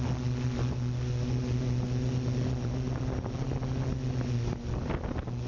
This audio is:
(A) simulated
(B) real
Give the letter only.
B